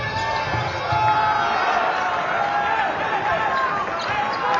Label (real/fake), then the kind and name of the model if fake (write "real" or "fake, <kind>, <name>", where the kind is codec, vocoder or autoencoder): real